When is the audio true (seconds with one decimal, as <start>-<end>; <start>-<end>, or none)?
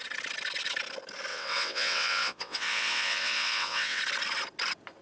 0.0-1.3; 4.0-5.0